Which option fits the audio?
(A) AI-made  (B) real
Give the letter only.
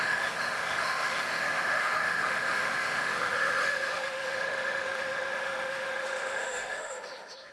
A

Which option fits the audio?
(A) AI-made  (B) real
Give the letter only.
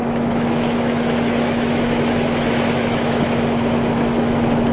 A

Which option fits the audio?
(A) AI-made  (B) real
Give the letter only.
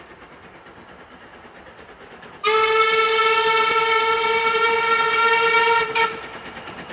B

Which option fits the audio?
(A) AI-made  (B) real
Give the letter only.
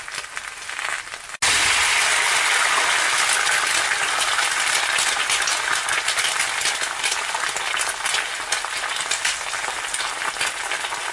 B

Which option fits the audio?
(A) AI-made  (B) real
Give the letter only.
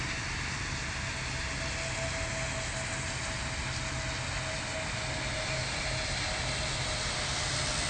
B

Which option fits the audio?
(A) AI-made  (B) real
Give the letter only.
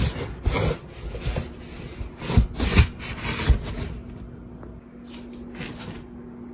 B